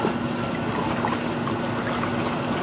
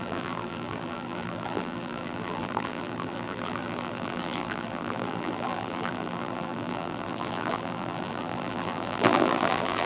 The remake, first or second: second